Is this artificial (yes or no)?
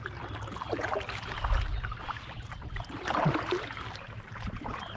no